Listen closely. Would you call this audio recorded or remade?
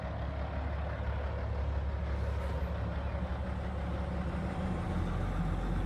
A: recorded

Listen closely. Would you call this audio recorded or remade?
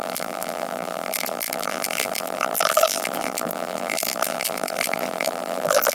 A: remade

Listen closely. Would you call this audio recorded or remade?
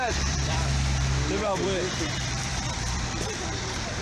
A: remade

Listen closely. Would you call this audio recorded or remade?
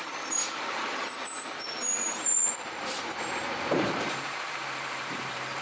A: remade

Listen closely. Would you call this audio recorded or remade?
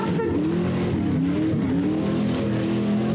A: recorded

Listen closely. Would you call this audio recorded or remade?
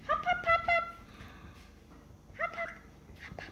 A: remade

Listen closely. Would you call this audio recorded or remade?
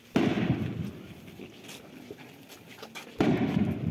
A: recorded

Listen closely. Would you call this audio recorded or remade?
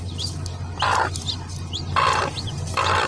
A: recorded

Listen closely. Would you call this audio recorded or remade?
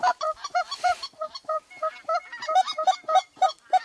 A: remade